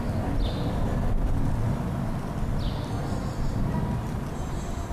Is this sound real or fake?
real